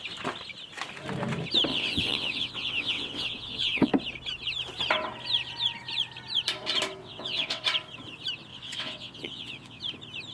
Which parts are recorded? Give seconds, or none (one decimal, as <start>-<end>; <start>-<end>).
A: 0.0-1.7; 3.9-7.0; 7.6-8.5; 9.8-10.3